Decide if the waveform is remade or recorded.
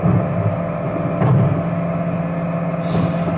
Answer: recorded